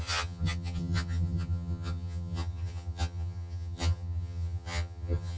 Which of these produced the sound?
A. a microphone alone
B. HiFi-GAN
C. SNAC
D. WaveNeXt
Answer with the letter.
B